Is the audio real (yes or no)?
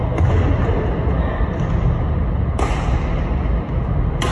yes